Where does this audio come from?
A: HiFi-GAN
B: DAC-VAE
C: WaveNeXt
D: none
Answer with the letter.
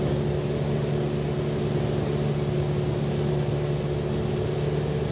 D